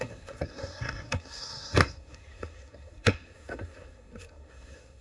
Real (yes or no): no